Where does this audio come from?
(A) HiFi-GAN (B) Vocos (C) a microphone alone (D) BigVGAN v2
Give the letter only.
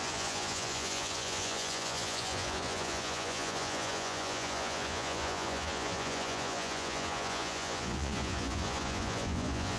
B